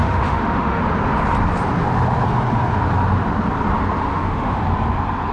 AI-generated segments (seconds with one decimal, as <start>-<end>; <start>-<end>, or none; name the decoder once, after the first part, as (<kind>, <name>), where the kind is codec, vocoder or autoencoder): 0.0-0.8 (autoencoder, DAC-VAE); 4.1-4.6